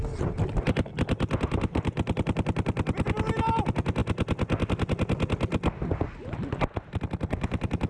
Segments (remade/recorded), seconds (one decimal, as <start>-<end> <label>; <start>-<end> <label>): 0.0-7.9 recorded